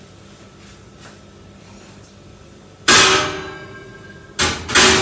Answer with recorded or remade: recorded